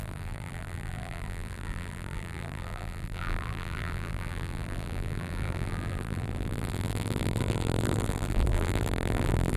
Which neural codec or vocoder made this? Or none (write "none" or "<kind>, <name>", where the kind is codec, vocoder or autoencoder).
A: vocoder, BigVGAN v2